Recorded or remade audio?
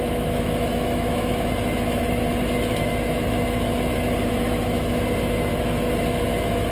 remade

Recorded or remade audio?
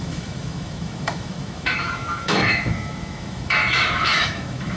remade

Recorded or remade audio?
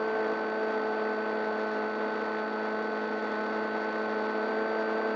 recorded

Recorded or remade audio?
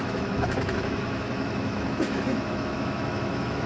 remade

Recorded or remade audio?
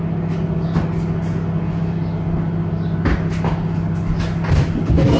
recorded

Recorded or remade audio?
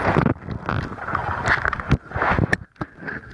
recorded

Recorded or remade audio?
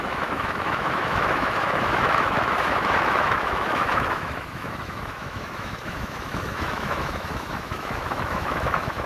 remade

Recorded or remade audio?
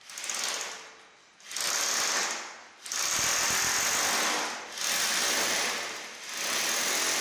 recorded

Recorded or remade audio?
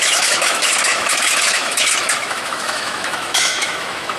remade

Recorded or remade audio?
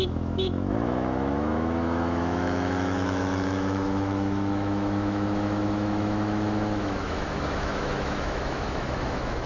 remade